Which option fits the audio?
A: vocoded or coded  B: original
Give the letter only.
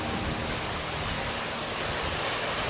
B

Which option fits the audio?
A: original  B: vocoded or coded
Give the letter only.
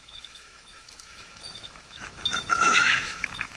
B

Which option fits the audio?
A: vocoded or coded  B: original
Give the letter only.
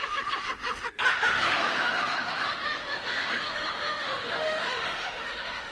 A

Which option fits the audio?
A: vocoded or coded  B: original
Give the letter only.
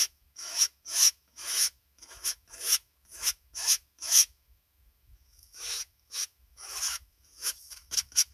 A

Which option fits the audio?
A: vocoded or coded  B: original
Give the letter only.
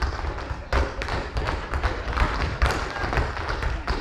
B